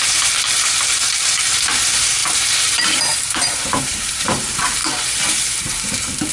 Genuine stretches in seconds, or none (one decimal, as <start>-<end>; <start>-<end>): 4.8-5.6